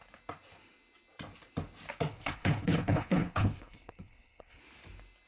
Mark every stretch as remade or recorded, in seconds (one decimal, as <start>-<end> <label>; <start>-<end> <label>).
0.0-2.1 recorded; 2.1-4.6 remade; 4.6-5.3 recorded